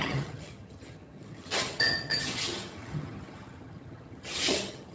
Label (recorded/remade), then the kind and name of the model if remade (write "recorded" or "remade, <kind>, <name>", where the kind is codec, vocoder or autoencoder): remade, vocoder, HiFi-GAN